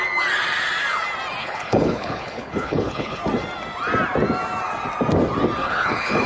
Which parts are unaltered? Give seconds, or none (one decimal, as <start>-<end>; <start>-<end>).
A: 0.0-1.4; 3.2-5.6